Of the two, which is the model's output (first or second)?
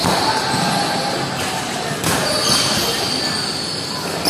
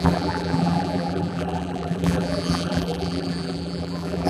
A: second